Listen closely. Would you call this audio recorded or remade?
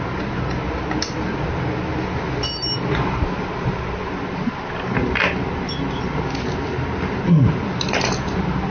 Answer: recorded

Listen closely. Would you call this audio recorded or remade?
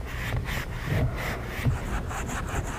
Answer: recorded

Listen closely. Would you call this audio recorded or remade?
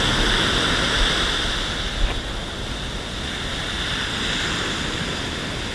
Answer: recorded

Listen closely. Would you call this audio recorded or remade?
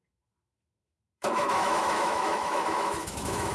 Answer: remade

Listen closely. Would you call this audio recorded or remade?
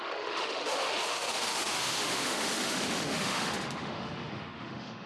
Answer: remade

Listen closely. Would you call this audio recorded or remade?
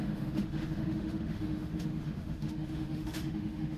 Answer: remade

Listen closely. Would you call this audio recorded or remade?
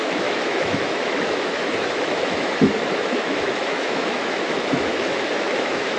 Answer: remade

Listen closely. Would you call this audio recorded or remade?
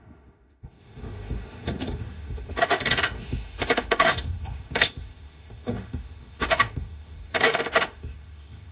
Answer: remade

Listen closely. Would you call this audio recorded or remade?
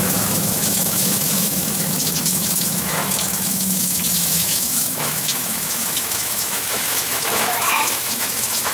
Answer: remade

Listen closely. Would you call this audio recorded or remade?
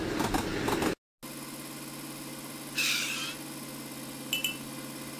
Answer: recorded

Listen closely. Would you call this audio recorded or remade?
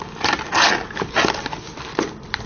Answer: recorded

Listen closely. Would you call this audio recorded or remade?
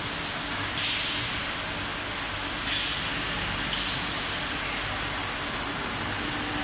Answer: recorded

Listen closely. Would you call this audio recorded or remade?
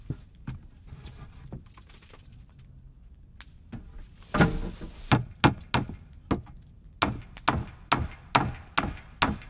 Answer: recorded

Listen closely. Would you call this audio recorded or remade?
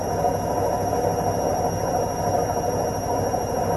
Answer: recorded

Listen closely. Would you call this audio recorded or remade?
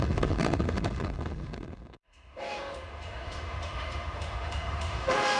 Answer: remade